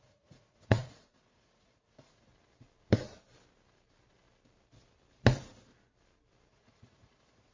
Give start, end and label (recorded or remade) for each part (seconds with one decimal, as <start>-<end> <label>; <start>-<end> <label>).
0.0-2.3 remade; 2.3-6.5 recorded; 6.5-7.5 remade

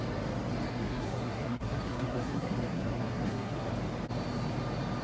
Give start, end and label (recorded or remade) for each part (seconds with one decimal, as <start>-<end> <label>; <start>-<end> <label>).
0.0-0.7 recorded; 0.7-3.7 remade; 3.7-5.0 recorded